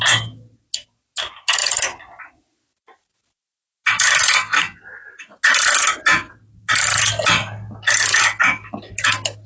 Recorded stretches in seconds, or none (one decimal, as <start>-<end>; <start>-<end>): 0.0-9.5